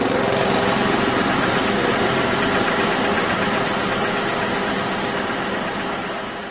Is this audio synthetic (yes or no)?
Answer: no